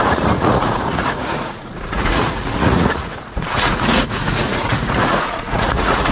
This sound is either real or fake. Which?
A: fake